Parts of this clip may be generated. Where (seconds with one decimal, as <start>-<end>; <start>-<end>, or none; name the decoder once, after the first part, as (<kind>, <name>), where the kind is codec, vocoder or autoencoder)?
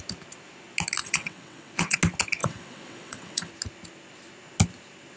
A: 1.0-2.0 (vocoder, WaveNeXt); 2.4-3.5